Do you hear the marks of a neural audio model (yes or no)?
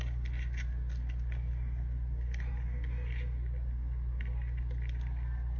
no